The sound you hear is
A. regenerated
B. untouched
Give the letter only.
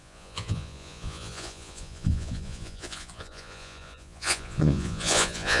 A